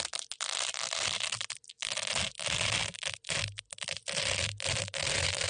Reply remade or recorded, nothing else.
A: recorded